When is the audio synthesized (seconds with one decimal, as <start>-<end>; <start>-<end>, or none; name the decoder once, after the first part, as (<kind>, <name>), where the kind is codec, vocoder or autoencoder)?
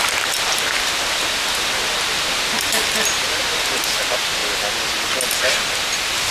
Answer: none